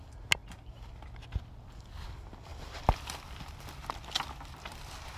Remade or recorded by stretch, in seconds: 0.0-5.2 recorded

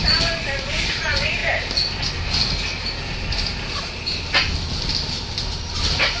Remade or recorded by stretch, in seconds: 0.0-1.4 remade; 1.4-4.7 recorded; 4.7-6.2 remade

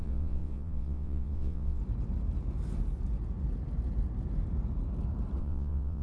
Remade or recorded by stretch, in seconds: 0.0-1.8 remade; 1.8-5.4 recorded; 5.4-6.0 remade